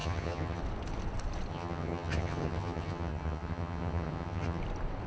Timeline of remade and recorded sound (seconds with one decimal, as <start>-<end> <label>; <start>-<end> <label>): 0.0-0.6 remade; 0.6-1.5 recorded; 1.5-4.6 remade; 4.6-5.1 recorded